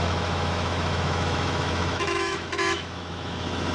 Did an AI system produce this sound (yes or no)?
yes